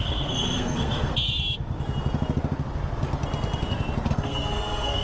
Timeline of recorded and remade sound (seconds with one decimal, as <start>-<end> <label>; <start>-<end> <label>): 0.0-1.1 remade; 1.1-4.1 recorded; 4.1-5.0 remade